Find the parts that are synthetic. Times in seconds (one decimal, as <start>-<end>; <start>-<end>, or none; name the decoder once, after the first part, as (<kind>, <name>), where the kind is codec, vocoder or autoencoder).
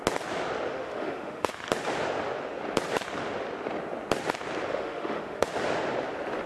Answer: 0.7-1.5 (autoencoder, DAC-VAE); 4.7-5.5